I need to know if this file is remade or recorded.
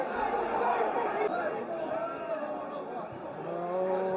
remade